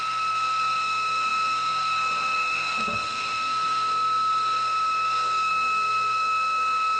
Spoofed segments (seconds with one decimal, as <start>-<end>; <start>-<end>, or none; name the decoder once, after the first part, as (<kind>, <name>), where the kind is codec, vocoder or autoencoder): 0.0-7.0 (codec, SNAC)